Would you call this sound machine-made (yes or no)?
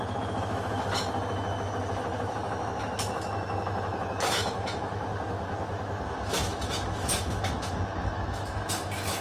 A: yes